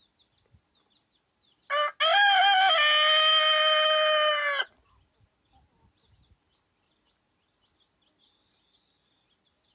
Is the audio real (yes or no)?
yes